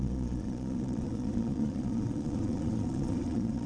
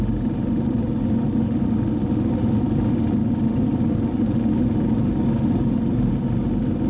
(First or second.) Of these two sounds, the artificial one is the first